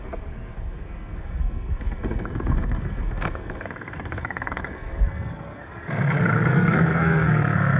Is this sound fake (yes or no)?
yes